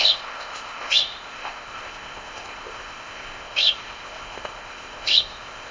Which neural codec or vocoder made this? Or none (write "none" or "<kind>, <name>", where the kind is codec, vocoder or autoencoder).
codec, ZipCodec